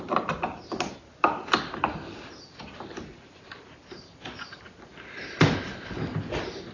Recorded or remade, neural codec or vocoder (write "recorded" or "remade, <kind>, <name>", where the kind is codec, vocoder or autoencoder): recorded